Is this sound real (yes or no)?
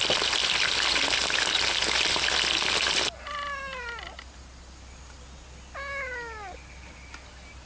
yes